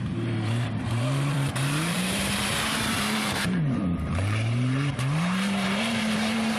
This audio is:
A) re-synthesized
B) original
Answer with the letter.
A